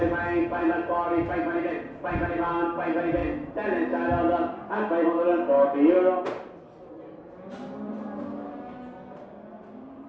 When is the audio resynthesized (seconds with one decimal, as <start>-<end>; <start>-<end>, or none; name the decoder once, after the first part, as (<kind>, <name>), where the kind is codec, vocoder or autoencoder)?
none